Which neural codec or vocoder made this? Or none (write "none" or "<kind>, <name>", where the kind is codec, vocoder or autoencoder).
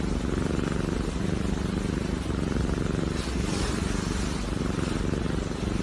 none